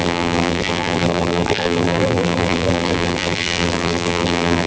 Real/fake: fake